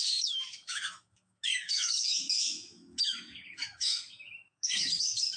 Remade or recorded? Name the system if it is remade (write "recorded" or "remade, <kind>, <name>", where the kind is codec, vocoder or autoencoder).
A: remade, autoencoder, DAC-VAE